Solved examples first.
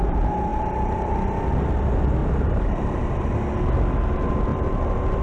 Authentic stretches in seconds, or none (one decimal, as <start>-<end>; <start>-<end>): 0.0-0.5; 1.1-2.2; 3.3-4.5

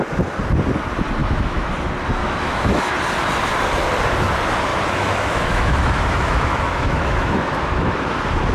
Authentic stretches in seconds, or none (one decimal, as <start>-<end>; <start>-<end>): 0.0-1.2; 1.7-2.2; 2.9-4.7; 8.0-8.5

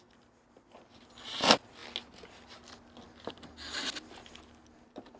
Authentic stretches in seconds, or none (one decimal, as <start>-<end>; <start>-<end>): 0.0-5.2